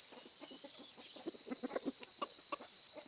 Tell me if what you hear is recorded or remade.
remade